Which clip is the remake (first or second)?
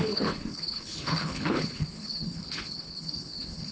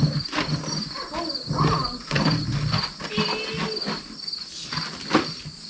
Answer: first